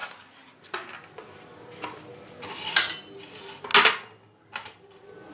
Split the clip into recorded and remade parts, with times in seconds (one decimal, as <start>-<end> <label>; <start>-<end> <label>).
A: 0.0-5.3 recorded